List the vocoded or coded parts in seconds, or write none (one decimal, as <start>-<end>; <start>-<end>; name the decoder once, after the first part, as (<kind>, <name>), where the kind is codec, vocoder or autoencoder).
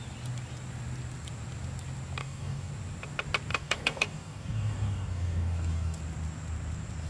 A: 2.2-2.7 (codec, DAC); 3.5-6.0